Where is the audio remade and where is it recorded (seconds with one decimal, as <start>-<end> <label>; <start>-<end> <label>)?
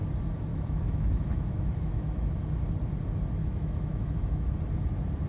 0.0-0.5 recorded; 0.5-2.3 remade; 2.3-3.4 recorded; 3.4-4.5 remade; 4.5-5.3 recorded